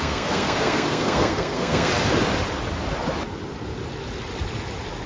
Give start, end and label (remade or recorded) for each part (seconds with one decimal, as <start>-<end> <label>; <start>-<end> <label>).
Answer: 0.0-1.9 remade; 1.9-5.1 recorded